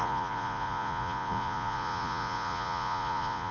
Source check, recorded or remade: remade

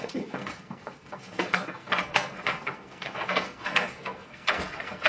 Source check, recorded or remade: remade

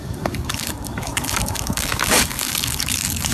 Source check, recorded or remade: remade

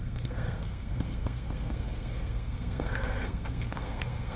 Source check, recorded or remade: remade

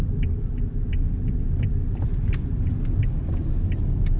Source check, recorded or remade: recorded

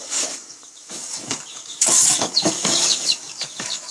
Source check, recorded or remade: remade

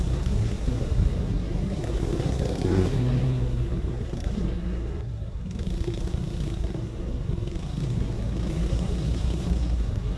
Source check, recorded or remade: remade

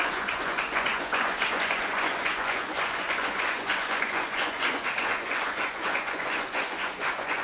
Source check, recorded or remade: remade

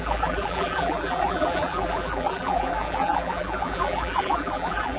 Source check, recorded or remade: remade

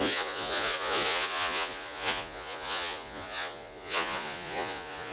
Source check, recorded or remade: remade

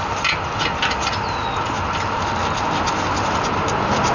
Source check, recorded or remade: recorded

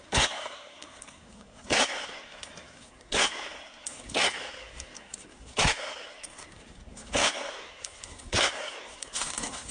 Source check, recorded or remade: remade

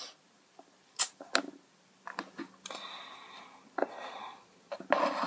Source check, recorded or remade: recorded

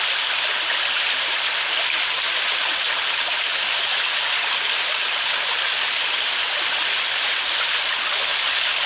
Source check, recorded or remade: recorded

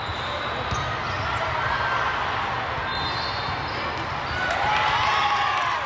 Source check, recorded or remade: recorded